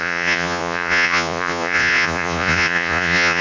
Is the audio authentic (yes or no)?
no